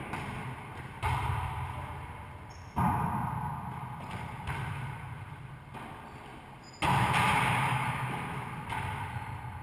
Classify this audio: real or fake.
real